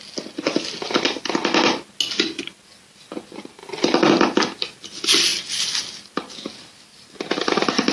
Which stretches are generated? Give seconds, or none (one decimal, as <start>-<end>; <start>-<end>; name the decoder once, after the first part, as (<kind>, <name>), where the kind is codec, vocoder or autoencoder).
none